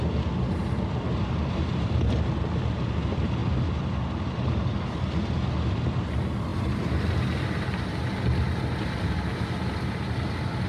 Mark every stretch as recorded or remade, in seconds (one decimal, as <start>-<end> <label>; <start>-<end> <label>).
0.0-10.7 recorded